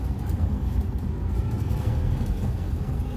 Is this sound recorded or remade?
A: remade